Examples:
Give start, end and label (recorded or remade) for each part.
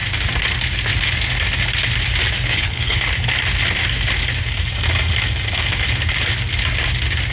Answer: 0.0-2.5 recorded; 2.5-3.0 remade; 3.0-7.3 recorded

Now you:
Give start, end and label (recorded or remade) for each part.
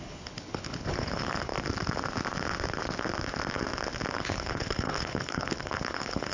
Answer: 0.0-1.5 remade; 1.5-4.1 recorded; 4.1-6.3 remade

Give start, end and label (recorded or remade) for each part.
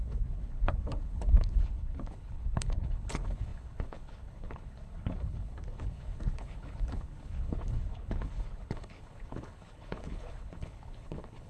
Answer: 0.0-11.5 remade